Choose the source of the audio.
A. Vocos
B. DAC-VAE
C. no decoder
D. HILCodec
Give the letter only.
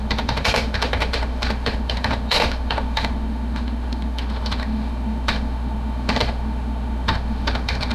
B